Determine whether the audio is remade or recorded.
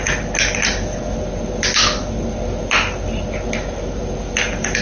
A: recorded